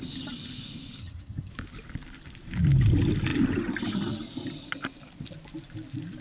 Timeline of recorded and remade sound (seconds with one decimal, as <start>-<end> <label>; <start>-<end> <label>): 0.0-1.0 recorded; 1.0-1.5 remade; 1.5-6.2 recorded